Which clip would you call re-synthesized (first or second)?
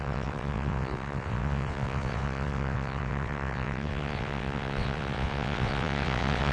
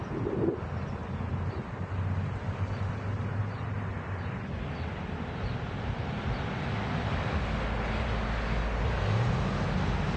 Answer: first